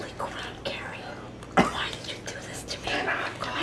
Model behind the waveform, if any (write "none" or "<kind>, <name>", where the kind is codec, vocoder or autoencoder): none